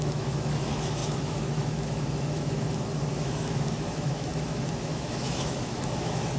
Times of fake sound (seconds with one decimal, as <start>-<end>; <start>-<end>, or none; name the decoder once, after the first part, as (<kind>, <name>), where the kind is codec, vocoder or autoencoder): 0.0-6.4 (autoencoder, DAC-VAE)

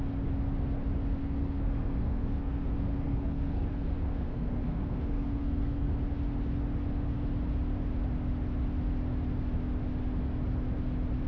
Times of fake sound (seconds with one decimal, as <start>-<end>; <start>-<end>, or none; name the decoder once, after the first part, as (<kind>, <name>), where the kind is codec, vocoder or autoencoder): 1.2-5.9 (codec, SNAC)

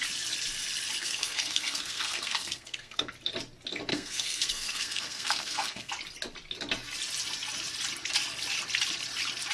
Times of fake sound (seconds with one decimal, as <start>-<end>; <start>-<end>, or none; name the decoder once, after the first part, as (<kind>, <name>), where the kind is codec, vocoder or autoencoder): 1.0-3.1 (codec, SNAC); 3.9-5.9

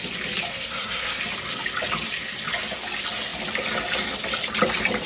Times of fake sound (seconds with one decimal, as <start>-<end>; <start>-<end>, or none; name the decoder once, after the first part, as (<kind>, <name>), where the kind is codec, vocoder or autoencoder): 0.5-1.2 (codec, SNAC)